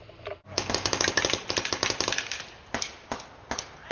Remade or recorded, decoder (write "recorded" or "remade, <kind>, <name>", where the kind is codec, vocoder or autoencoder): recorded